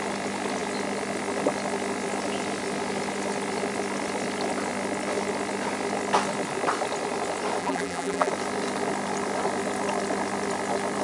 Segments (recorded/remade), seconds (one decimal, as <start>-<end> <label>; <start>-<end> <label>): 0.0-7.6 recorded; 7.6-8.3 remade; 8.3-11.0 recorded